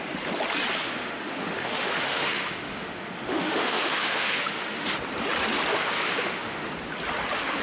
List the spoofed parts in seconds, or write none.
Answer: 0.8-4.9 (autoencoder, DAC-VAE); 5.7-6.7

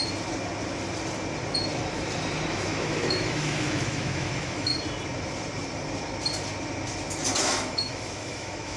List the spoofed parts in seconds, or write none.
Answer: 2.5-4.7 (autoencoder, DAC-VAE); 7.4-8.8

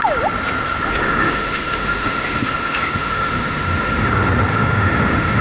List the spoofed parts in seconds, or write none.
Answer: 0.9-4.1 (autoencoder, DAC-VAE); 4.5-5.4